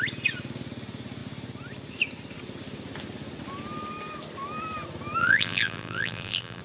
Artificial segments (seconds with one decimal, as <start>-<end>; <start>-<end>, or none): 5.2-6.6